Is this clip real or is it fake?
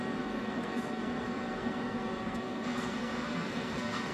fake